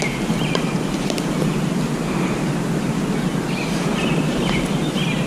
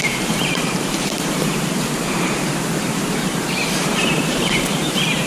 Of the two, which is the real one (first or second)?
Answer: first